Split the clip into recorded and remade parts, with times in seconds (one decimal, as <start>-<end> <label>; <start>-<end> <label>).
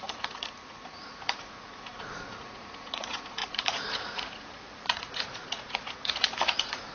0.0-6.9 remade